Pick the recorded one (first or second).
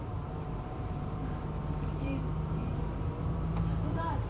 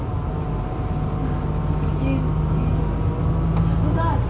second